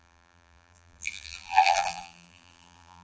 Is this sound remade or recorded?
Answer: remade